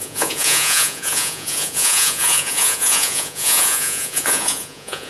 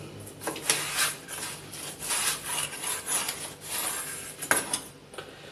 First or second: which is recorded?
second